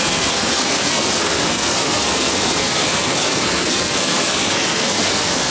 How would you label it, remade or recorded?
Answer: remade